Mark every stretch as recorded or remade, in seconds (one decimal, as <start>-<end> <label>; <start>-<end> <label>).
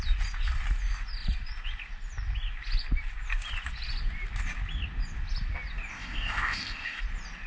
0.0-5.9 recorded; 5.9-7.0 remade; 7.0-7.5 recorded